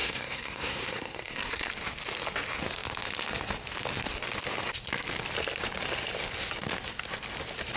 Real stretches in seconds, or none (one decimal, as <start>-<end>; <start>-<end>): 1.7-7.8